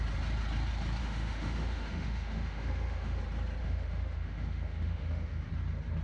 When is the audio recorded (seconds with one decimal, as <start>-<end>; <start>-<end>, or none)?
0.0-1.0; 3.2-3.6; 5.5-6.0

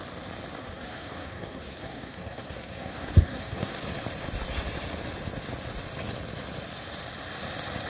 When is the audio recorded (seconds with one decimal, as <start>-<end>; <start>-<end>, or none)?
0.0-0.6; 3.8-7.9

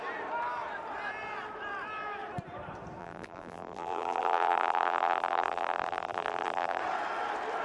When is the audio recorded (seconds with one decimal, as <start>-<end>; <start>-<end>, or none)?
0.0-3.0; 6.8-7.6